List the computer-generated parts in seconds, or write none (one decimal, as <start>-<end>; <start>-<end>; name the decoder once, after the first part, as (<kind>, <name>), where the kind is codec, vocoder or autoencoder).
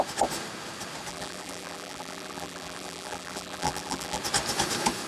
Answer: 1.1-4.2 (vocoder, BigVGAN v2)